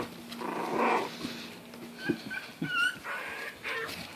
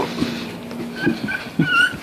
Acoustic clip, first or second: first